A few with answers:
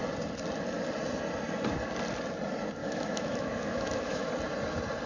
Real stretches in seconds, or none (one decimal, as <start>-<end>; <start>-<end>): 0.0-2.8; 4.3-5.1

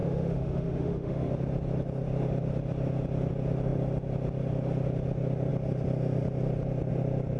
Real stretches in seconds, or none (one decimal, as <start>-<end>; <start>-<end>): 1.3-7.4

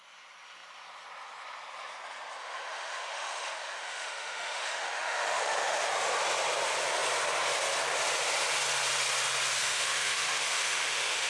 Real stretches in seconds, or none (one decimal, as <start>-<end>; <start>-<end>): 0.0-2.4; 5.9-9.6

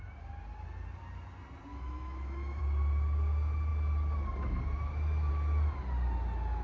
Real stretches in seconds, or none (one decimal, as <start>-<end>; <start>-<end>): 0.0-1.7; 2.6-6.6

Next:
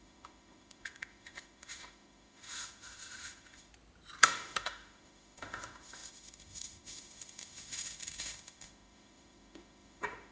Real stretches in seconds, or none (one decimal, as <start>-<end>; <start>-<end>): 3.7-4.2

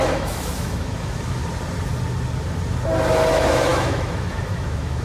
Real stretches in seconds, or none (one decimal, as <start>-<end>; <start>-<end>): 1.4-3.3

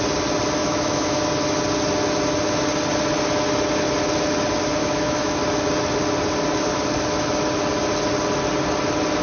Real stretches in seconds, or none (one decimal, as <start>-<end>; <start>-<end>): 0.0-0.6; 1.3-4.8; 5.4-9.2